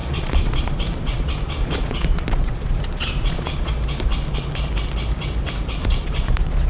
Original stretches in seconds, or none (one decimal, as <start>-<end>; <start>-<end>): 3.7-5.8